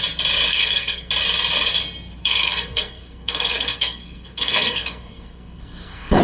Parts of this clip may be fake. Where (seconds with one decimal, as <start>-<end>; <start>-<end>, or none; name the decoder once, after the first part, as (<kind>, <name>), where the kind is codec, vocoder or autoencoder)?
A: 0.5-1.1 (codec, SNAC); 2.2-6.2